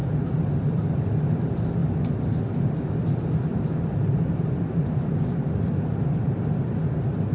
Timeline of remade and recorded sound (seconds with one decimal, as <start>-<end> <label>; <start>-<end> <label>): 0.0-1.0 remade; 1.0-3.5 recorded; 3.5-5.1 remade; 5.1-7.3 recorded

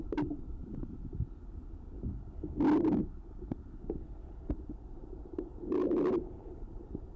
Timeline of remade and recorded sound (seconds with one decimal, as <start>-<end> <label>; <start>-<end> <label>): 0.0-0.6 remade; 0.6-4.3 recorded; 4.3-7.2 remade